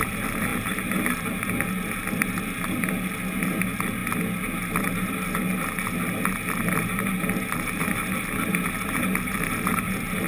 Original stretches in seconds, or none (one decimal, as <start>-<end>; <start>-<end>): 0.0-10.3